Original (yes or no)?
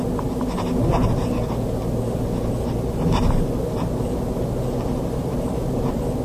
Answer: yes